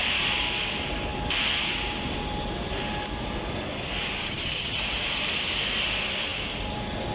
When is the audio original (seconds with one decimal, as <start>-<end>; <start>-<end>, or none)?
0.0-4.2; 4.8-7.1